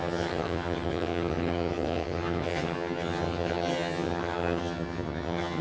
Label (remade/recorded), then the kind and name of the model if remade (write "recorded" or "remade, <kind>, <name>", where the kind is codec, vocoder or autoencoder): remade, vocoder, HiFi-GAN